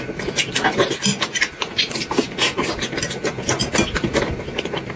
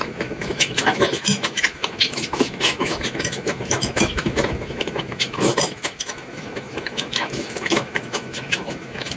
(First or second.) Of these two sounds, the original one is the first